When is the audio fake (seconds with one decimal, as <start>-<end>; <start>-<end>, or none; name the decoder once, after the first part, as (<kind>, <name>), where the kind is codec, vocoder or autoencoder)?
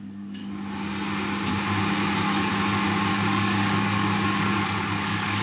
0.0-0.4 (codec, DAC); 1.8-2.5; 3.1-5.4